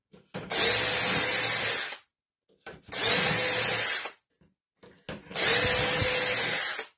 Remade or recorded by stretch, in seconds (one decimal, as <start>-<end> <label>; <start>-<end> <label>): 0.0-7.0 recorded